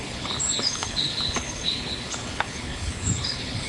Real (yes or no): no